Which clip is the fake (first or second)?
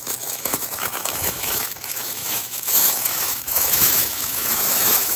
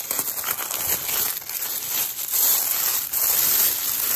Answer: first